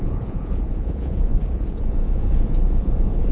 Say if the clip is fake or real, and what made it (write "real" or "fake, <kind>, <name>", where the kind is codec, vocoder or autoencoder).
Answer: fake, vocoder, Vocos